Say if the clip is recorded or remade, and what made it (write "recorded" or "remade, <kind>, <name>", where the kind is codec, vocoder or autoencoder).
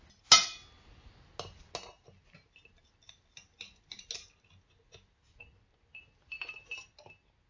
recorded